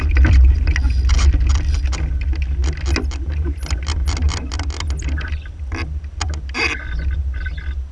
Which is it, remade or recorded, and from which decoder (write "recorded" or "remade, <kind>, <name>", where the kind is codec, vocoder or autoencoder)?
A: recorded